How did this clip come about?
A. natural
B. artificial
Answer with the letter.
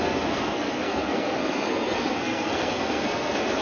B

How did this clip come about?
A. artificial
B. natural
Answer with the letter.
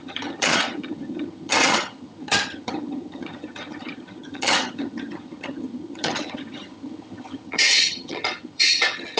A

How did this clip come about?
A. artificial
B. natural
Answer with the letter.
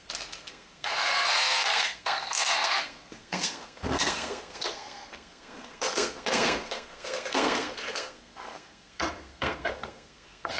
A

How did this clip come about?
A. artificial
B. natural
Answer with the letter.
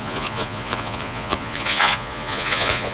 A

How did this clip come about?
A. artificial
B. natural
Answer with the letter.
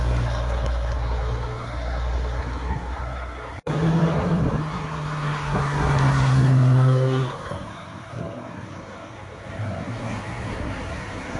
A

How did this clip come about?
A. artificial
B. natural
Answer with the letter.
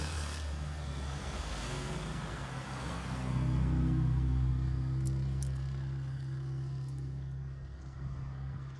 A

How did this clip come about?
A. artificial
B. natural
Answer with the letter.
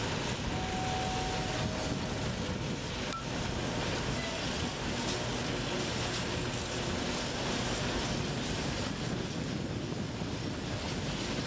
B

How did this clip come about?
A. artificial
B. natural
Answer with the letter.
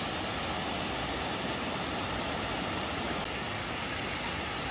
B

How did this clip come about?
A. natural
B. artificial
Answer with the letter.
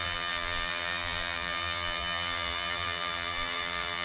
B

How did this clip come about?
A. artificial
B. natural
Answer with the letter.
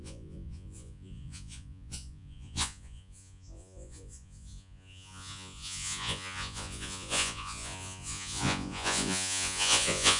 A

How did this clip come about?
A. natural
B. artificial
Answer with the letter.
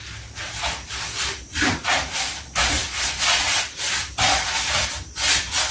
A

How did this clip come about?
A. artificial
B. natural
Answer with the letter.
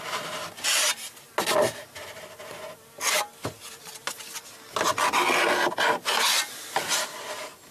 B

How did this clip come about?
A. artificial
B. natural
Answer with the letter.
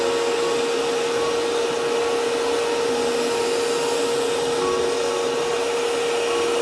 B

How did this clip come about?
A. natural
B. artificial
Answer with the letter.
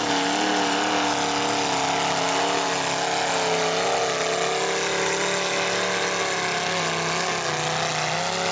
A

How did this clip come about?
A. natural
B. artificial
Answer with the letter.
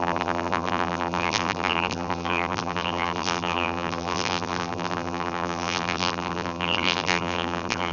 B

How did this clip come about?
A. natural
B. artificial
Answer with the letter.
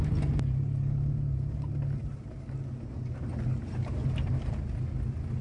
A